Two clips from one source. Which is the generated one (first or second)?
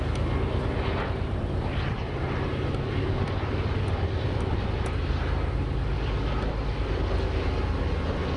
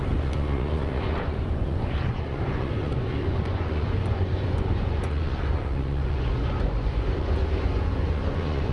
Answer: second